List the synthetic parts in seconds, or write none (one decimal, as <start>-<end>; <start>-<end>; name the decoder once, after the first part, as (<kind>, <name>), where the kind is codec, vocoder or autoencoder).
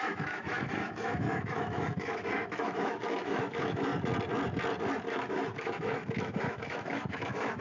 0.0-3.9 (autoencoder, DAC-VAE); 5.1-7.6